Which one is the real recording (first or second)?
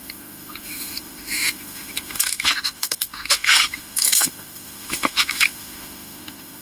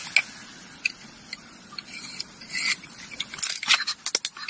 second